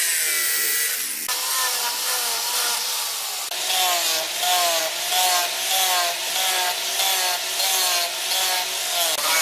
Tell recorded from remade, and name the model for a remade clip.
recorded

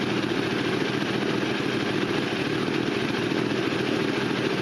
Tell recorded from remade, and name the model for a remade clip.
remade, vocoder, BigVGAN v2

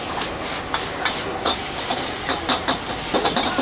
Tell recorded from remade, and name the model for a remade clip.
recorded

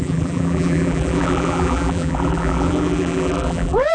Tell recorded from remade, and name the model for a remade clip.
remade, vocoder, BigVGAN v2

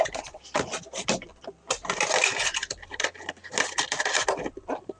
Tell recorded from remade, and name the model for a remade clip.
recorded